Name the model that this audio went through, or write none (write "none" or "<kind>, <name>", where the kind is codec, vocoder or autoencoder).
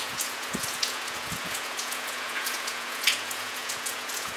vocoder, Vocos